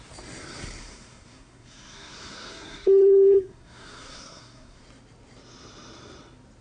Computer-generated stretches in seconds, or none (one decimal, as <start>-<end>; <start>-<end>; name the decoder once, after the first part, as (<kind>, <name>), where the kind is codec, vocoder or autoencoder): 0.8-4.8 (codec, SNAC)